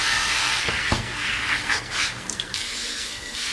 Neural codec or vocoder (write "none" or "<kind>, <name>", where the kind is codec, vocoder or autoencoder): codec, SNAC